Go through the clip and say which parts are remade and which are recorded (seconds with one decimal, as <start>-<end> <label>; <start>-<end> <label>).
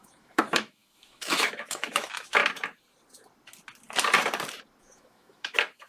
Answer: 0.0-2.4 remade; 2.4-4.8 recorded; 4.8-5.9 remade